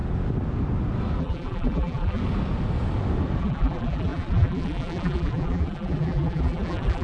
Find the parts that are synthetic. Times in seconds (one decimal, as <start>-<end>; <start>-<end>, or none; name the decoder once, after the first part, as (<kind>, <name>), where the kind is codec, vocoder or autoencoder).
1.2-2.2 (vocoder, BigVGAN v2); 3.4-7.0